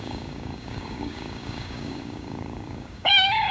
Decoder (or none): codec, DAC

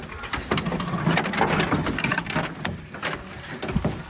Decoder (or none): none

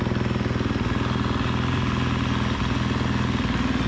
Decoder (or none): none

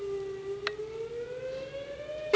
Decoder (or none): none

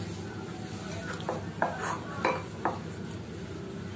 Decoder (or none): none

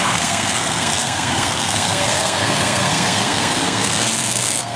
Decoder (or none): codec, SNAC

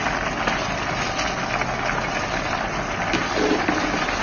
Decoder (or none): none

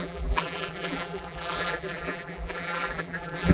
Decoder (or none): vocoder, BigVGAN v2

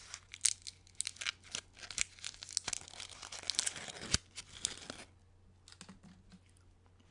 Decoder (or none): none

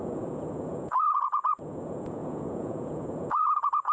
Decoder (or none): vocoder, Vocos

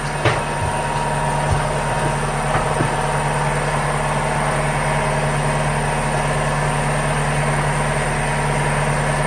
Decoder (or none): none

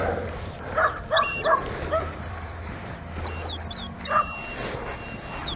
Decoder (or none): vocoder, BigVGAN v2